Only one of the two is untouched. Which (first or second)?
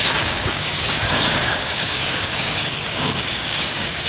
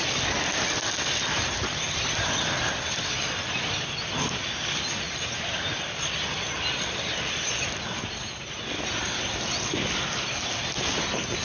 second